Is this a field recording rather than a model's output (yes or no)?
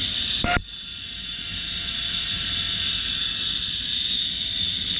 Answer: yes